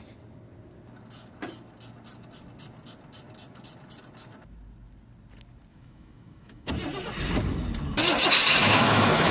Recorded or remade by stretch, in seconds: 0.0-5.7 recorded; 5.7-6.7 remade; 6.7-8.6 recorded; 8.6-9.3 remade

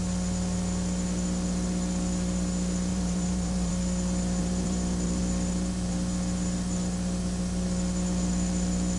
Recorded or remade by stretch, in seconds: 0.0-2.9 recorded; 2.9-3.7 remade; 3.7-4.4 recorded; 4.4-5.2 remade; 5.2-9.0 recorded